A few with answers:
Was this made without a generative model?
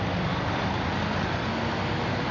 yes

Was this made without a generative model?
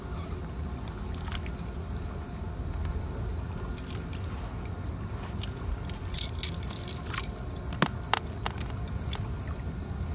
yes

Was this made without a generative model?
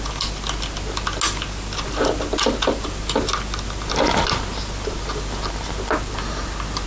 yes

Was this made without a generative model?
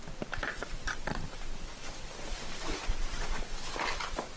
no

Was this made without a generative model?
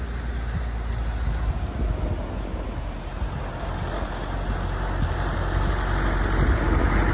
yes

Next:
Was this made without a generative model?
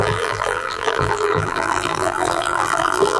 no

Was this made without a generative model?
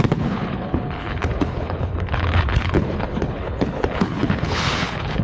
no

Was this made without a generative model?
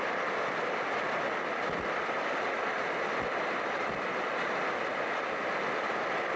yes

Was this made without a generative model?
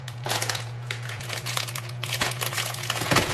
no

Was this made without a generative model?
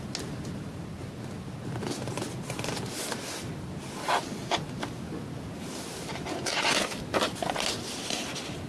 yes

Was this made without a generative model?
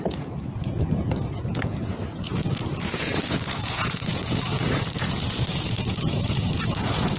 no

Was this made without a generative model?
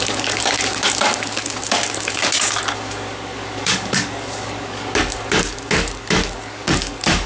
no